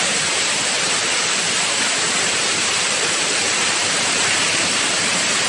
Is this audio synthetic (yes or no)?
yes